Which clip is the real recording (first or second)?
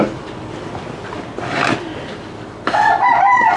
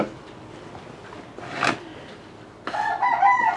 second